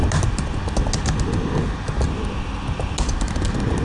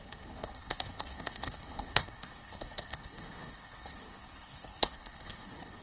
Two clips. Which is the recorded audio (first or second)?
first